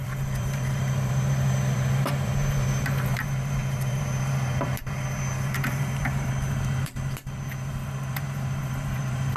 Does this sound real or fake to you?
fake